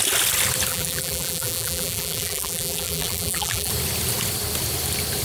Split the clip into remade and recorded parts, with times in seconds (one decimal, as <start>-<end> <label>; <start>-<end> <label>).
0.0-0.7 recorded; 0.7-3.7 remade; 3.7-5.2 recorded